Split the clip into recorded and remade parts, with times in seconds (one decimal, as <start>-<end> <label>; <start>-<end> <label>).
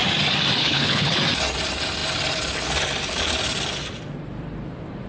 0.0-0.6 recorded; 0.6-1.2 remade; 1.2-5.1 recorded